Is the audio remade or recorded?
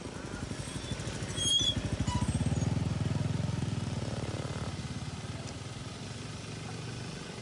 recorded